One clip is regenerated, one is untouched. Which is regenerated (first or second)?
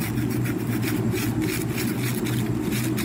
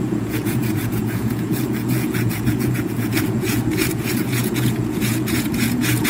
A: second